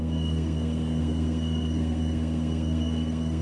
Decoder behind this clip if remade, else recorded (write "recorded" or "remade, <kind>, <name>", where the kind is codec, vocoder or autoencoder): remade, codec, SNAC